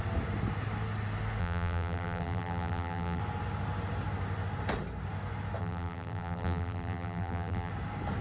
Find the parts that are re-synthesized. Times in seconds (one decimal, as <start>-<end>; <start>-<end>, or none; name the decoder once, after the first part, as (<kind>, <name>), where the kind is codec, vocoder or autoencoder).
1.4-3.2 (vocoder, BigVGAN v2); 5.6-7.7